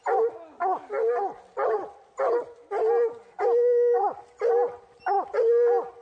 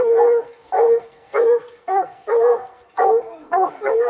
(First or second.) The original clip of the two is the first